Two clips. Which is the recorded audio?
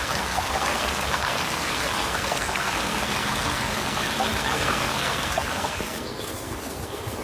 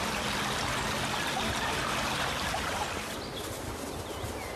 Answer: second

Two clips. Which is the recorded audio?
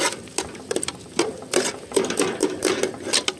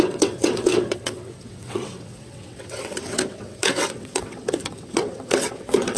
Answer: first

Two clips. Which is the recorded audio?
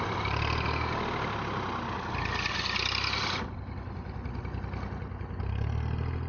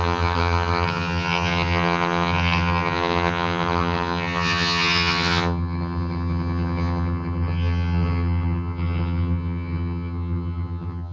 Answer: first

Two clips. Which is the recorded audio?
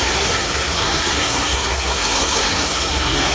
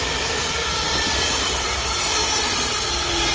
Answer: second